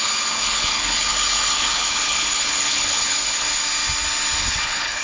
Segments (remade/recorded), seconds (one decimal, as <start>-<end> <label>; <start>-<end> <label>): 0.0-3.6 remade; 3.6-4.4 recorded; 4.4-5.0 remade